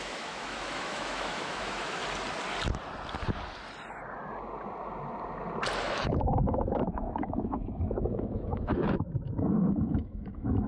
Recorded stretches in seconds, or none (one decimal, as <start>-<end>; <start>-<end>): 2.0-5.8